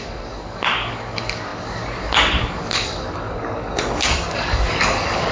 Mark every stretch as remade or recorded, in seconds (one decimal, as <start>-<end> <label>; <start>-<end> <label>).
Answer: 0.0-5.3 remade